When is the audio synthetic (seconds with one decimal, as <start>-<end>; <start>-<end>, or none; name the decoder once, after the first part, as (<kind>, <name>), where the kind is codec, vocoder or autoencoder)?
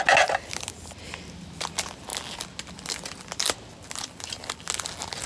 none